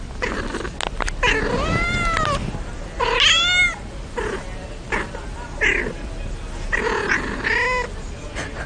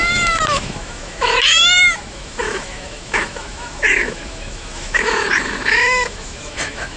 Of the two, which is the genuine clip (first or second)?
first